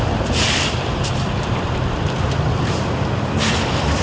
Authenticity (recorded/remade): recorded